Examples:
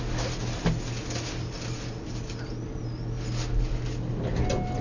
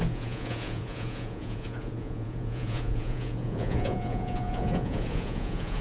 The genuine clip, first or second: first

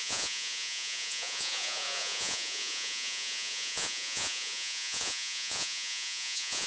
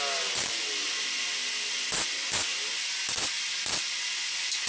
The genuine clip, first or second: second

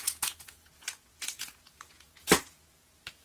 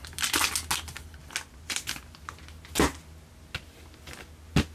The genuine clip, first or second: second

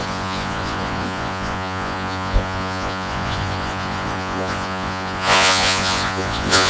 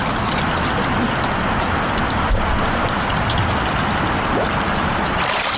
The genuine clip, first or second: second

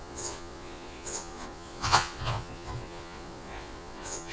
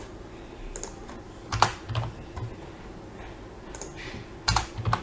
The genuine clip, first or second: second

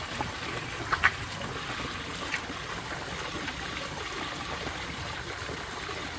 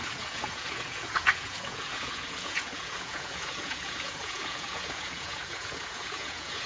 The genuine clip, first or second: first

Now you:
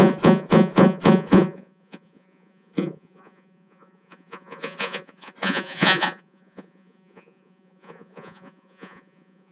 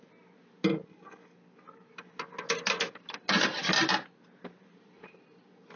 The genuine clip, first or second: second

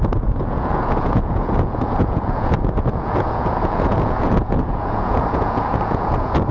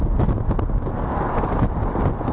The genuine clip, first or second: second